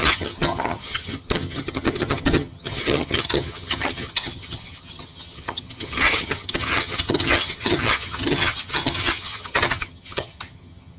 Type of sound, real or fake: fake